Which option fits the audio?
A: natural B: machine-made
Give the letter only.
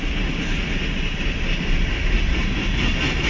A